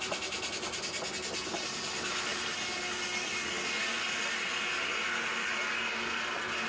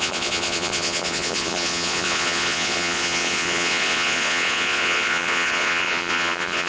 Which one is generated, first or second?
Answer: second